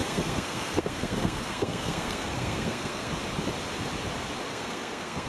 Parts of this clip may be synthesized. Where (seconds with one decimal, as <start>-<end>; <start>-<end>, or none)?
0.0-3.2; 4.5-5.3